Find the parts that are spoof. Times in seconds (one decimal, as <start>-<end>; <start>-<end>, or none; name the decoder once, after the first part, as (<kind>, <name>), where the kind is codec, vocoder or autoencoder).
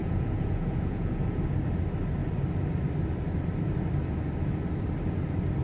0.0-1.4 (vocoder, Vocos)